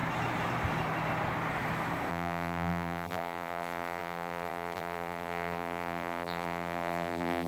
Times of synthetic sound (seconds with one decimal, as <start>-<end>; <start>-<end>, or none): 2.1-7.5